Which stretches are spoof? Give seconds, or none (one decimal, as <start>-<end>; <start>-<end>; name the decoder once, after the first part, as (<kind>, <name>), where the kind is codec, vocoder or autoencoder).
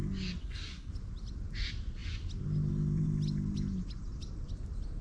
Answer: 0.4-0.9 (codec, SNAC)